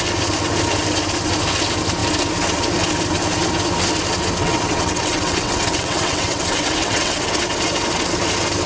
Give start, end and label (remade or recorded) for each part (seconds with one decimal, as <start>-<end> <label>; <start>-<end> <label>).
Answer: 0.0-4.4 recorded; 4.4-7.4 remade; 7.4-8.7 recorded